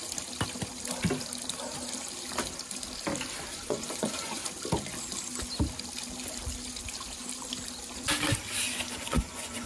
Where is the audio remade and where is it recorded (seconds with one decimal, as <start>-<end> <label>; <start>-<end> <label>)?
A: 0.0-3.5 recorded; 3.5-4.4 remade; 4.4-9.0 recorded; 9.0-9.7 remade